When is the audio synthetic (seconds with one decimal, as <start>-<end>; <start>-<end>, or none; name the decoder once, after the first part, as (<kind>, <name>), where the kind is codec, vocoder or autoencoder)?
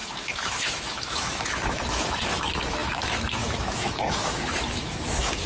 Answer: 0.0-5.5 (autoencoder, DAC-VAE)